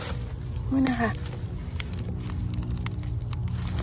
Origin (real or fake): real